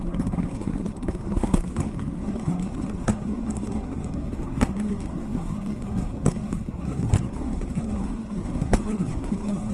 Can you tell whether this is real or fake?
fake